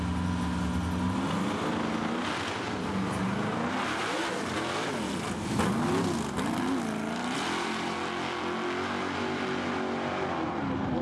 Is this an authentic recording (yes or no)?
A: yes